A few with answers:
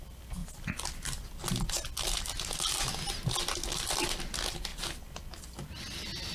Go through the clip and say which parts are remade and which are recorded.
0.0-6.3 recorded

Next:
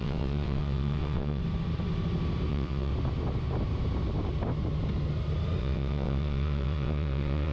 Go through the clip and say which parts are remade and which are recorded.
0.0-1.4 remade; 1.4-2.5 recorded; 2.5-2.9 remade; 2.9-5.6 recorded; 5.6-7.5 remade

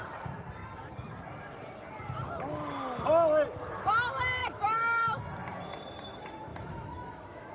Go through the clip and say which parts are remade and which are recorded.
0.0-4.4 recorded; 4.4-5.2 remade; 5.2-6.5 recorded; 6.5-7.5 remade

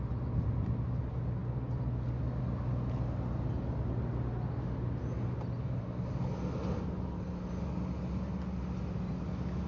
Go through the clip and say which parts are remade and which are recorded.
0.0-9.7 recorded

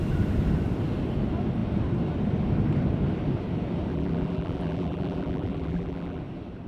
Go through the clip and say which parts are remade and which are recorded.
0.0-3.9 recorded; 3.9-6.2 remade; 6.2-6.7 recorded

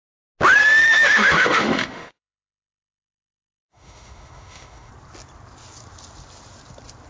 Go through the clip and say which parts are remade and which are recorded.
0.0-0.6 recorded; 0.6-4.9 remade; 4.9-7.1 recorded

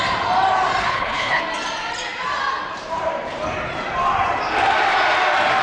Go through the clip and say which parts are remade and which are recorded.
0.0-0.8 recorded; 0.8-1.4 remade; 1.4-5.6 recorded

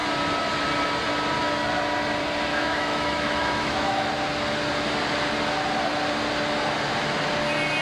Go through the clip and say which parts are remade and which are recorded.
0.0-2.5 recorded; 2.5-4.1 remade; 4.1-7.8 recorded